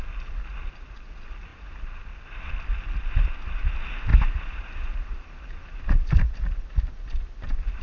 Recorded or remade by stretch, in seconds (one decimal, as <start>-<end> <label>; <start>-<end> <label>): 0.0-1.5 recorded; 1.5-2.4 remade; 2.4-4.1 recorded; 4.1-6.2 remade; 6.2-7.8 recorded